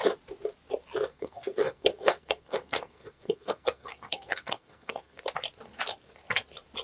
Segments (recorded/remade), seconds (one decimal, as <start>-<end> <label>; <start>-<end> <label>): 0.0-1.1 recorded; 1.1-5.2 remade; 5.2-6.8 recorded